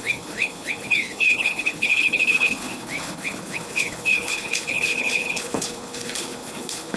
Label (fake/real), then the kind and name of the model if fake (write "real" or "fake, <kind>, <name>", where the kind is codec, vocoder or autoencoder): fake, codec, HILCodec